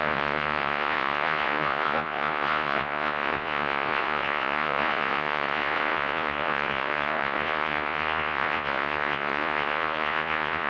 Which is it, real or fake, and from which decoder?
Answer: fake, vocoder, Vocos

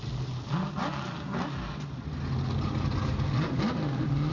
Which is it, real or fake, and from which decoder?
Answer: real